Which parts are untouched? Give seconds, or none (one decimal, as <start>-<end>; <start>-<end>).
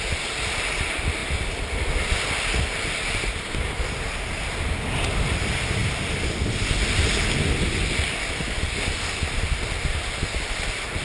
0.0-11.0